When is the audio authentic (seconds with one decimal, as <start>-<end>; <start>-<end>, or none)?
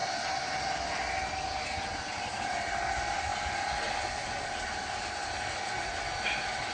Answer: 0.0-6.7